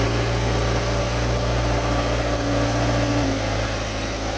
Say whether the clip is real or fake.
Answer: real